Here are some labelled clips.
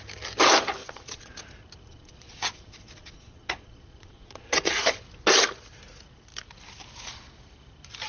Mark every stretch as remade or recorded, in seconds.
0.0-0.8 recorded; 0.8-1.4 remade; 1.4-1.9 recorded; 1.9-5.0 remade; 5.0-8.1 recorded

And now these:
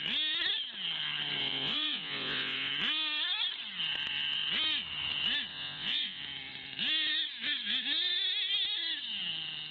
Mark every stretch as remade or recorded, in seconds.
0.0-1.4 recorded; 1.4-2.7 remade; 2.7-5.5 recorded; 5.5-6.2 remade; 6.2-9.7 recorded

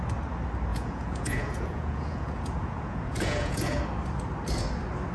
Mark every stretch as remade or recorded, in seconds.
0.0-0.7 recorded; 0.7-3.8 remade; 3.8-5.1 recorded

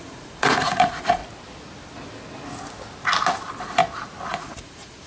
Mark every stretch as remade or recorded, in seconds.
0.0-1.2 remade; 1.2-4.3 recorded; 4.3-5.1 remade

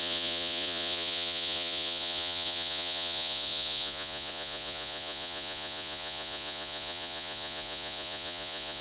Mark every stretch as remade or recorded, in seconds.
0.0-8.8 remade

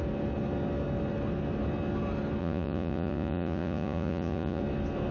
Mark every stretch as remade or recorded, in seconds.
0.0-2.4 recorded; 2.4-4.6 remade; 4.6-5.1 recorded

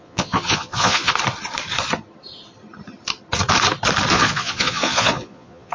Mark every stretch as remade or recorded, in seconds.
0.0-1.1 remade; 1.1-4.1 recorded; 4.1-5.7 remade

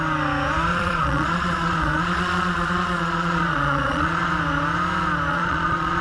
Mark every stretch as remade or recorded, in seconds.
0.0-0.7 recorded; 0.7-4.3 remade; 4.3-5.3 recorded; 5.3-6.0 remade